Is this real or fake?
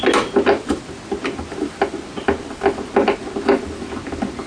real